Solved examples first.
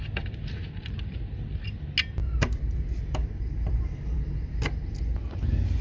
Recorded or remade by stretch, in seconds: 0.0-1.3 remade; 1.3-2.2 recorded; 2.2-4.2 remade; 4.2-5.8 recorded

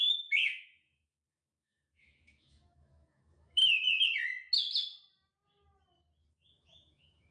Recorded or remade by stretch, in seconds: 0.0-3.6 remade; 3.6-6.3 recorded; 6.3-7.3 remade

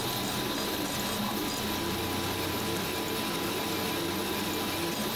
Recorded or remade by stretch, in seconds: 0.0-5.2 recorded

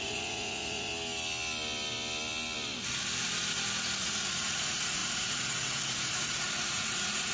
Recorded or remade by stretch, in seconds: 0.0-0.9 remade; 0.9-4.0 recorded; 4.0-7.3 remade

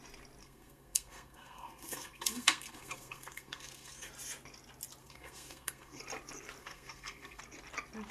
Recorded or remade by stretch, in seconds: 0.0-0.4 recorded; 0.4-4.1 remade; 4.1-5.0 recorded; 5.0-6.0 remade; 6.0-6.6 recorded; 6.6-7.4 remade; 7.4-8.1 recorded